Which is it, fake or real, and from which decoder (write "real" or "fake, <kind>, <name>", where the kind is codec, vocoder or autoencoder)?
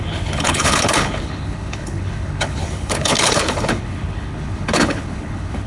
fake, codec, HILCodec